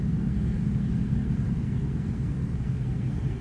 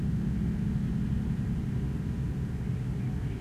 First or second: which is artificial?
first